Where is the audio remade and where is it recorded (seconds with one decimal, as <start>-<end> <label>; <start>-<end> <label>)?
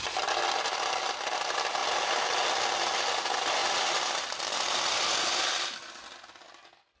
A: 0.0-7.0 recorded